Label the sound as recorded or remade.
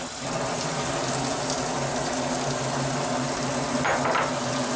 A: recorded